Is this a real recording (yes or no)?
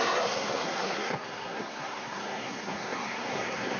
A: no